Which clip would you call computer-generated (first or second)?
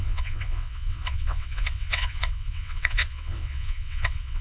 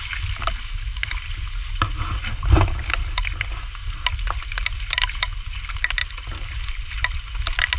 first